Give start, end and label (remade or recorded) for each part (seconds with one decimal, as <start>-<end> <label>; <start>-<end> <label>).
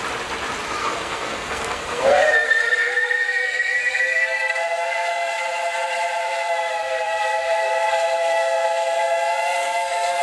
0.0-0.8 recorded; 0.8-5.4 remade; 5.4-6.2 recorded; 6.2-10.2 remade